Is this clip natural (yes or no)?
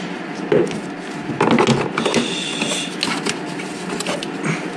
yes